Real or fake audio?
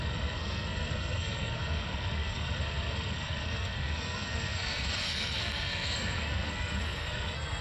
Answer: fake